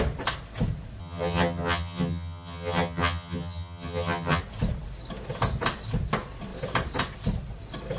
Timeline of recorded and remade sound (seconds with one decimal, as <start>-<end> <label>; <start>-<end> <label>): 0.0-1.0 recorded; 1.0-4.4 remade; 4.4-8.0 recorded